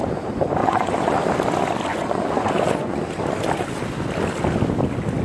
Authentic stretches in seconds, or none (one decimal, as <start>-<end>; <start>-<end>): 0.0-0.6; 1.2-1.9; 3.0-5.2